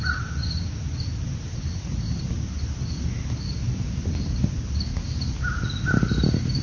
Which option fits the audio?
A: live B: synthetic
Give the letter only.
A